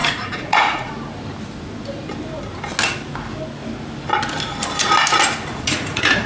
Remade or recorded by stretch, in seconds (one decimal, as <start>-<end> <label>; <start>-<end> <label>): 0.0-0.9 remade; 0.9-5.5 recorded; 5.5-6.3 remade